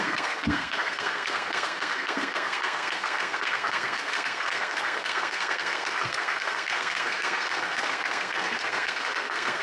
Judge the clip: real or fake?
fake